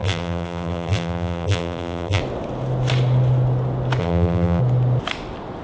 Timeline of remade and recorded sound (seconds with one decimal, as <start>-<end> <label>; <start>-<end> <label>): 0.0-2.2 remade; 2.2-4.0 recorded; 4.0-4.6 remade; 4.6-5.6 recorded